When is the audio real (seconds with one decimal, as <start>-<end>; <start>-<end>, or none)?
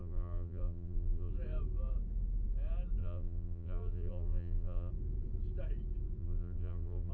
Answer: 1.3-3.0; 4.9-6.2